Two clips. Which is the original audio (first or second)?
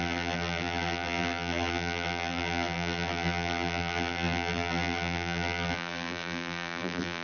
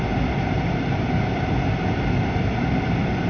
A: second